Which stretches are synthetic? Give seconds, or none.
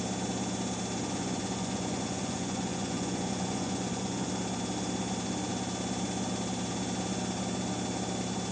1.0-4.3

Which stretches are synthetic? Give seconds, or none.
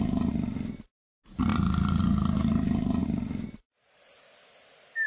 1.5-2.0; 3.0-4.0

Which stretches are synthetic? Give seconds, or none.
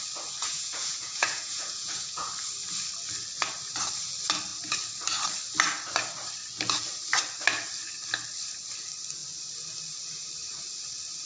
0.4-2.3